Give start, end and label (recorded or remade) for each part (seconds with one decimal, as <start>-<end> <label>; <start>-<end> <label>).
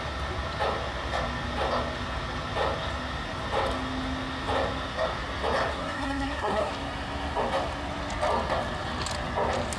0.0-5.7 recorded; 5.7-6.7 remade; 6.7-9.8 recorded